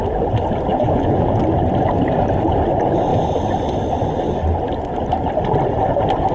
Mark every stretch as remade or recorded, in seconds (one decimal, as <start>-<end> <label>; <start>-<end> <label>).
0.0-0.7 recorded; 0.7-1.4 remade; 1.4-6.3 recorded